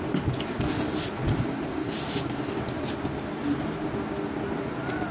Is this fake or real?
real